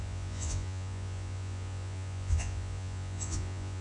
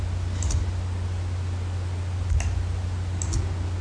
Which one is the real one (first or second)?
second